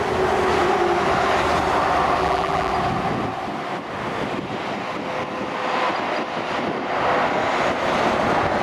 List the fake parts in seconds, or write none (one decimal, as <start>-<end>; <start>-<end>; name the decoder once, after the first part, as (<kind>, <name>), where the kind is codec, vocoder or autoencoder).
2.2-2.7 (vocoder, BigVGAN v2)